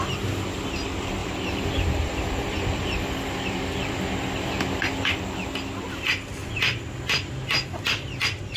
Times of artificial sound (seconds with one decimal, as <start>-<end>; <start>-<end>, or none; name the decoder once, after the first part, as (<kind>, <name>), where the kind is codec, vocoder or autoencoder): 1.2-3.9 (vocoder, BigVGAN v2)